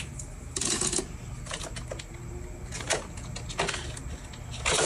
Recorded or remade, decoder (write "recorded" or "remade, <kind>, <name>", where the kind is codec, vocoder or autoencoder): recorded